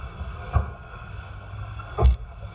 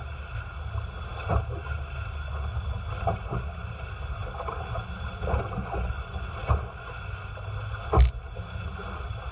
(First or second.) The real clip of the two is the second